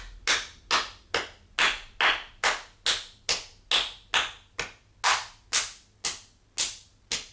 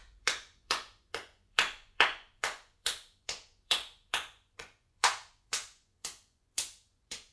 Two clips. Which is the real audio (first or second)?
first